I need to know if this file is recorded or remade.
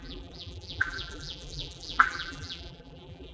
remade